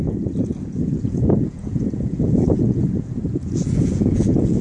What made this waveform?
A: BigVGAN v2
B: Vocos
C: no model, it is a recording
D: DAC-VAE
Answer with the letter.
B